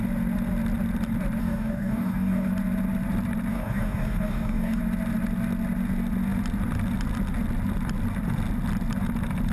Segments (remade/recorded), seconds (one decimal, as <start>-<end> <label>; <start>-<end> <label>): 0.0-1.4 recorded; 1.4-2.5 remade; 2.5-3.5 recorded; 3.5-4.8 remade; 4.8-9.5 recorded